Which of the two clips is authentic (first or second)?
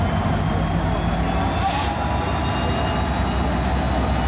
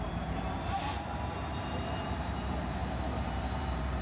first